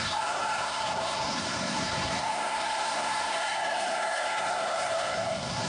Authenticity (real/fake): fake